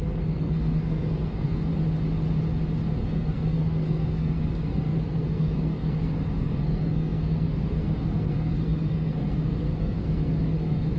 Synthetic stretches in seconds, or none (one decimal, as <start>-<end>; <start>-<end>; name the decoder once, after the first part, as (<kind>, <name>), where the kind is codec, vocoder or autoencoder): 0.0-1.7 (codec, SNAC); 3.0-11.0